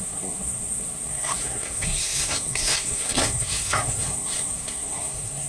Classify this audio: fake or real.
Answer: fake